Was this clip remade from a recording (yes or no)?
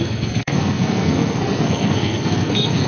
yes